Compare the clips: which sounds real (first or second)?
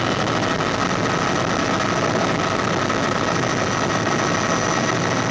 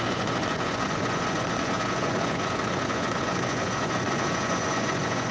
first